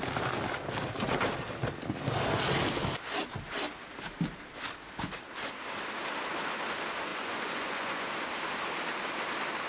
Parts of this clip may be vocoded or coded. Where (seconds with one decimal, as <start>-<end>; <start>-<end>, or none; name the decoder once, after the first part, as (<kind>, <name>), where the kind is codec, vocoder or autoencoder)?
7.1-8.1 (vocoder, Vocos)